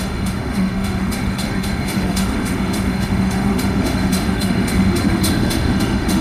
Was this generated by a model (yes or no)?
yes